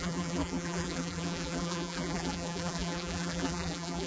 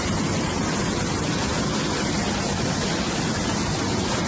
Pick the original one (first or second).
second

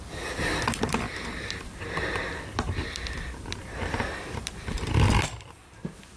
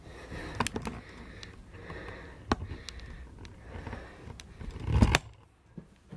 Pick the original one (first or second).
second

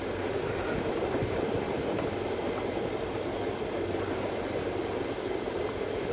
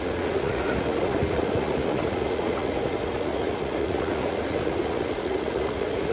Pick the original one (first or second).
first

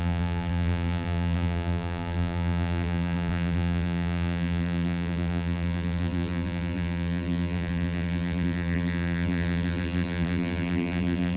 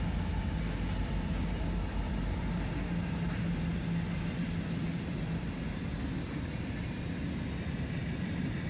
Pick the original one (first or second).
second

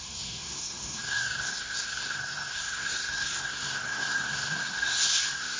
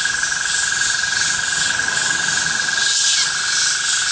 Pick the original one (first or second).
second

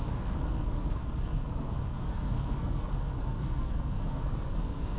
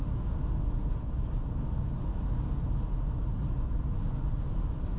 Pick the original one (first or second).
second